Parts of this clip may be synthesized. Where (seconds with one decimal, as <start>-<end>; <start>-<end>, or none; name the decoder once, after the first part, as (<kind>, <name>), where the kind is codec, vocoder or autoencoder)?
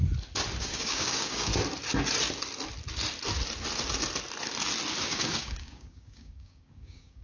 0.6-1.5 (codec, DAC); 5.0-7.2